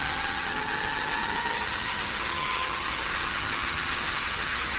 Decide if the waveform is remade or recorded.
remade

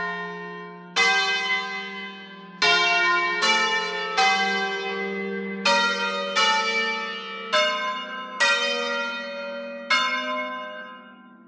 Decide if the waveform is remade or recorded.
recorded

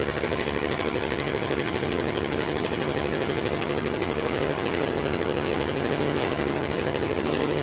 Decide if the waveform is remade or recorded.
remade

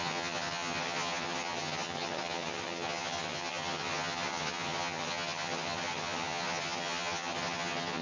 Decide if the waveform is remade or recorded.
remade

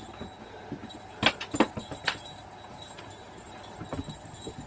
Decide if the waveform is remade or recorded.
recorded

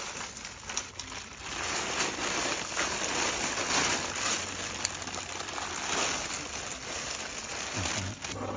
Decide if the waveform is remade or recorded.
recorded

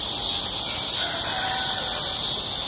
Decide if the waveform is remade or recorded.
recorded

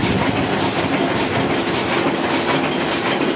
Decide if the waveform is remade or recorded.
recorded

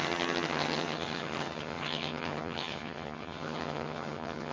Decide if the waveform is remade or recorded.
remade